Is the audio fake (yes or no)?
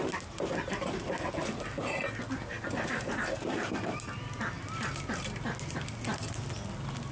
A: no